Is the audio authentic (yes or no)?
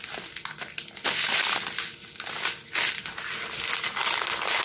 yes